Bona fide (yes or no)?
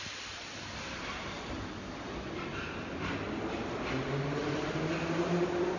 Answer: yes